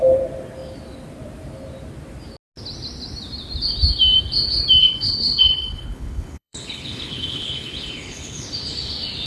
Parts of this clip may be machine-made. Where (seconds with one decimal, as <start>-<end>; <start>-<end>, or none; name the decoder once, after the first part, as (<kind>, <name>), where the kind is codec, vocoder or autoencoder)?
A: 4.8-8.5 (codec, HILCodec)